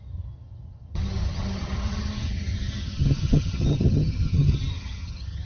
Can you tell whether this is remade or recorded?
remade